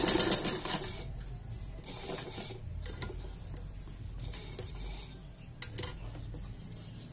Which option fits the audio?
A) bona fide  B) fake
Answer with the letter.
A